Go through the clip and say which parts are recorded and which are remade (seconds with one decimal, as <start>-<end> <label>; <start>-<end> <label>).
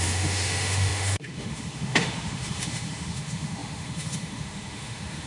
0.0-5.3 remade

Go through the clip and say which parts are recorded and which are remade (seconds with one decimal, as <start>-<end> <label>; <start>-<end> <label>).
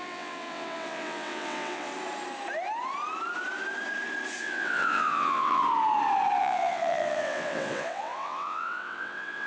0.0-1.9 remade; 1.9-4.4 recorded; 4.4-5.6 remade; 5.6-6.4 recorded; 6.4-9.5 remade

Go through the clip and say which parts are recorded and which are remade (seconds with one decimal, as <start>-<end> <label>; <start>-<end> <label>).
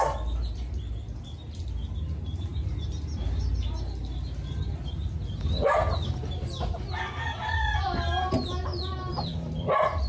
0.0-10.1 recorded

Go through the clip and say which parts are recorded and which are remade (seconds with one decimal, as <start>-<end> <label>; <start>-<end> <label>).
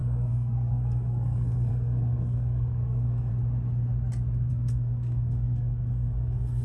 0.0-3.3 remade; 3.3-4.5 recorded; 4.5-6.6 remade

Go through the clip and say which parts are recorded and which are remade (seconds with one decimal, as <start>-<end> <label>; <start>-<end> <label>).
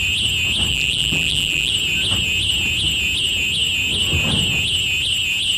0.0-0.7 recorded; 0.7-1.7 remade; 1.7-5.6 recorded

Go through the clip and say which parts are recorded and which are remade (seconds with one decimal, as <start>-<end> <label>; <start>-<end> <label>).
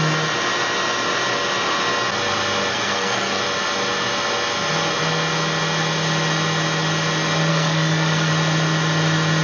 0.0-2.7 recorded; 2.7-3.4 remade; 3.4-7.5 recorded; 7.5-8.3 remade; 8.3-9.4 recorded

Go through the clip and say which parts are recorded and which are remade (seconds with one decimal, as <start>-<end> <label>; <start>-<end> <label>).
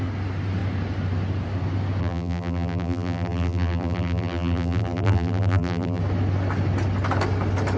0.0-2.0 recorded; 2.0-6.0 remade; 6.0-7.8 recorded